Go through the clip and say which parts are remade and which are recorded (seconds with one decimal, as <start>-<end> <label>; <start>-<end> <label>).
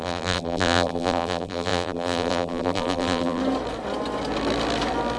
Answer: 0.0-3.4 remade; 3.4-5.2 recorded